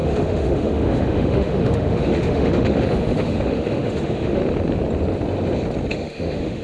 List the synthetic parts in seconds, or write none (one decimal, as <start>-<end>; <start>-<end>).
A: 0.0-4.4; 5.9-6.6